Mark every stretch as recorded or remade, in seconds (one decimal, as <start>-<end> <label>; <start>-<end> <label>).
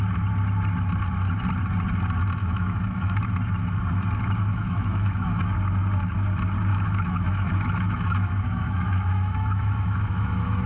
0.0-2.4 recorded; 2.4-3.2 remade; 3.2-4.5 recorded; 4.5-5.5 remade; 5.5-6.7 recorded; 6.7-10.7 remade